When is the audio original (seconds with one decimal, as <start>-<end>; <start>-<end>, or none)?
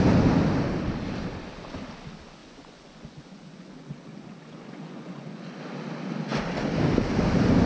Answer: 0.0-2.4; 5.6-7.7